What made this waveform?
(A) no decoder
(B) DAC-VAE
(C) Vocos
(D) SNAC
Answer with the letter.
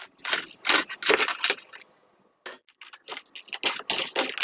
A